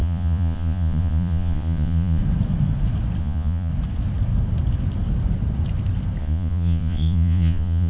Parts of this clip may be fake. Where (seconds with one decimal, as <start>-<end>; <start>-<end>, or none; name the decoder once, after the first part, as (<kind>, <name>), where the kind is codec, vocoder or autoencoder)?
0.0-2.2 (vocoder, Vocos); 3.2-3.7; 6.2-7.9